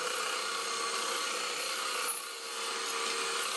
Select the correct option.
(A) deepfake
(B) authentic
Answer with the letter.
B